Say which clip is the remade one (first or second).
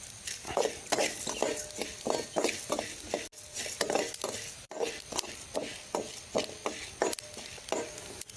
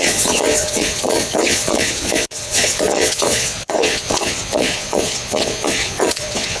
second